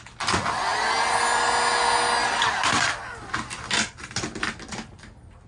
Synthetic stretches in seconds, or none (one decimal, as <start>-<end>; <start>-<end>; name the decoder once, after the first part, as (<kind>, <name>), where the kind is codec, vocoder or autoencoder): none